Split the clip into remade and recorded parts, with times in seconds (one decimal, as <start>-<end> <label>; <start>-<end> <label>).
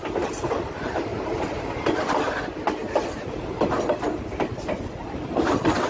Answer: 0.0-5.9 recorded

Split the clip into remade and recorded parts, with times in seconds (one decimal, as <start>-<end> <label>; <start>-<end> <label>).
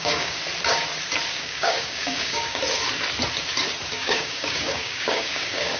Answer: 0.0-0.4 remade; 0.4-1.3 recorded; 1.3-2.6 remade; 2.6-3.9 recorded; 3.9-5.8 remade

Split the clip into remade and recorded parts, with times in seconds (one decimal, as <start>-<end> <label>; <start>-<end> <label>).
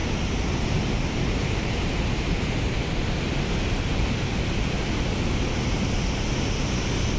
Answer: 0.0-7.2 recorded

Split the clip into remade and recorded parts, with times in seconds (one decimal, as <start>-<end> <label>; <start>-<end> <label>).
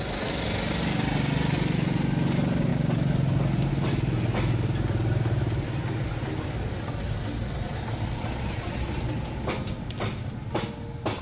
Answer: 0.0-11.2 recorded